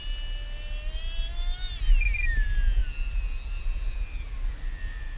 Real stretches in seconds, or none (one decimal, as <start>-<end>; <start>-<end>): 0.0-5.2